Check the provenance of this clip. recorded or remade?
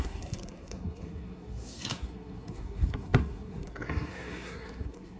remade